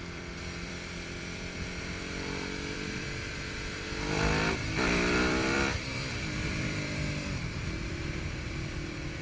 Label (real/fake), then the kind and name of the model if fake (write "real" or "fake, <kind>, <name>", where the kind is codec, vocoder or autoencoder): fake, vocoder, BigVGAN v2